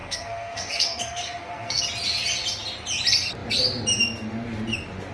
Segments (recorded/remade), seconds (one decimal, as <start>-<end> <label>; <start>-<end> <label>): 0.0-1.8 remade; 1.8-5.1 recorded